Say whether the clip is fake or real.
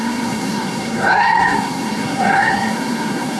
fake